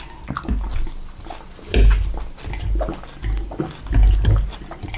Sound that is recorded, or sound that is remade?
recorded